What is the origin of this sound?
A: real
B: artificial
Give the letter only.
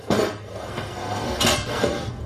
B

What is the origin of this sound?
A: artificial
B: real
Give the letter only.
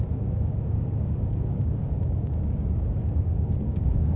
A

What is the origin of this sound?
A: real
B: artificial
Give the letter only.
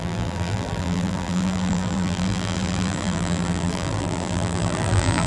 B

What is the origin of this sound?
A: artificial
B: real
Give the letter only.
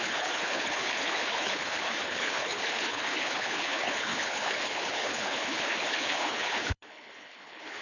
A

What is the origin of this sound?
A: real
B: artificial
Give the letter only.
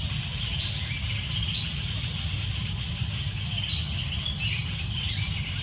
A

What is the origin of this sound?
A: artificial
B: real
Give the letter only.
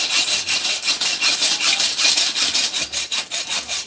B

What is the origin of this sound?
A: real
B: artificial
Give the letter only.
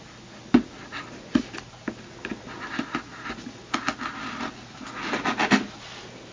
A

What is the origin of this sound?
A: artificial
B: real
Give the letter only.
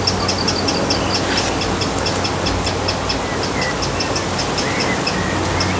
B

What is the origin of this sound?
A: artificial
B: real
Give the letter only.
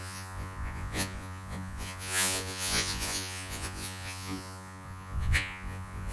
A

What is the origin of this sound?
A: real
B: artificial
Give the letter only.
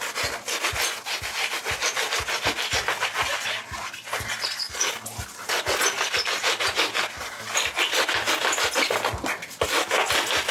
A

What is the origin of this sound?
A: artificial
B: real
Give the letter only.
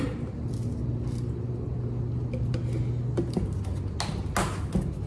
B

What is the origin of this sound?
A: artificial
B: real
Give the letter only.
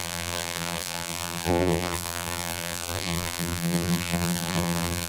A